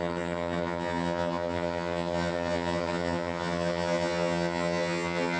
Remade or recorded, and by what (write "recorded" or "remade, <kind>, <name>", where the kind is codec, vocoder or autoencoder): remade, vocoder, HiFi-GAN